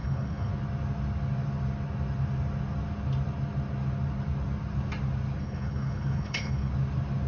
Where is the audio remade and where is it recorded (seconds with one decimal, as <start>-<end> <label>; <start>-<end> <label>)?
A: 0.0-0.5 remade; 0.5-5.4 recorded; 5.4-6.7 remade; 6.7-7.3 recorded